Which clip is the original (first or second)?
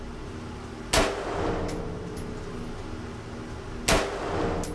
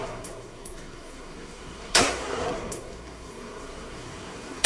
first